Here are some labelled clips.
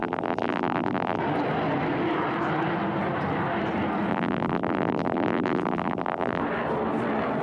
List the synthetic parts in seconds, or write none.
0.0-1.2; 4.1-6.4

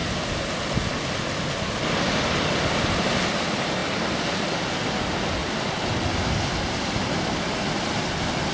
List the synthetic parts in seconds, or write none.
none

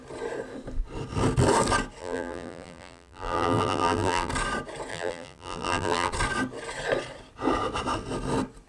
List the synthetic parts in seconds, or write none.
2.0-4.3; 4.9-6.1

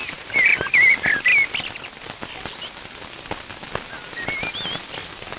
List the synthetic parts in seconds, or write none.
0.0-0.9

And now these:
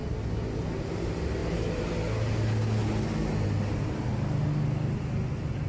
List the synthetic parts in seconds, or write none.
none

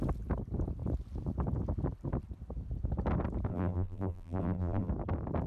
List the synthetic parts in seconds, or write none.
3.5-4.9